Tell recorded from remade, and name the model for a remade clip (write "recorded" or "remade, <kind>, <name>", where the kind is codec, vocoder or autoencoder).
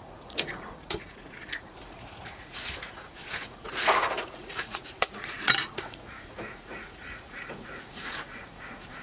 remade, vocoder, Vocos